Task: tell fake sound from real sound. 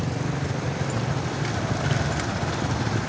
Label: real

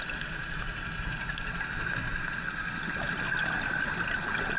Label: real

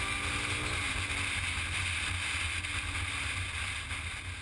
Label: real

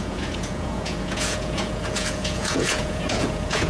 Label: fake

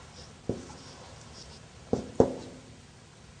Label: real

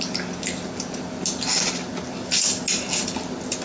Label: real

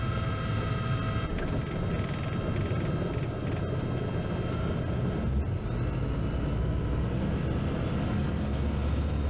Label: real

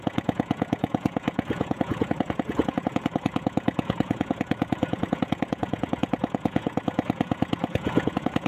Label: fake